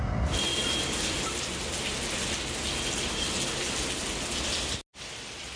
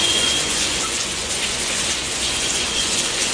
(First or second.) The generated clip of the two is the second